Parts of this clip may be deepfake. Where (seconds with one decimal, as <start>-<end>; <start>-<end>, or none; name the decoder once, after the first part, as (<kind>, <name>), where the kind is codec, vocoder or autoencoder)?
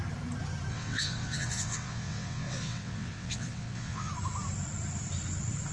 0.7-4.1 (vocoder, WaveNeXt)